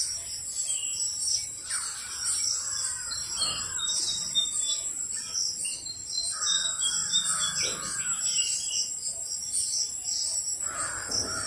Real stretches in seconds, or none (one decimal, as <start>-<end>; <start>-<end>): 0.0-0.9; 4.0-7.0; 8.7-11.5